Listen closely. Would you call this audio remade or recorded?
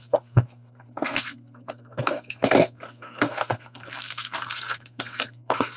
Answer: remade